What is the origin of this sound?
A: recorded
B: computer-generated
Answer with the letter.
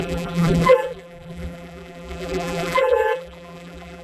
B